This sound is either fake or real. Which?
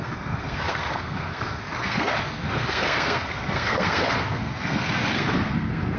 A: fake